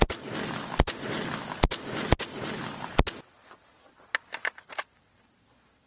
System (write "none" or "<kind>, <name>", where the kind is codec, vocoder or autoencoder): none